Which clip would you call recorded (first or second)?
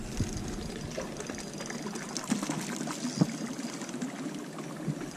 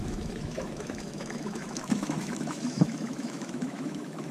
first